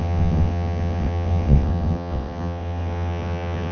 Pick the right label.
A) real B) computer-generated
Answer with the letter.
B